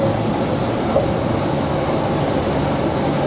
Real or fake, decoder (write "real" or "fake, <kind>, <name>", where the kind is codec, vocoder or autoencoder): real